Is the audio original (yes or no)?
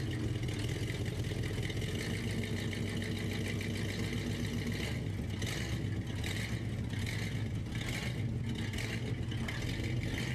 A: yes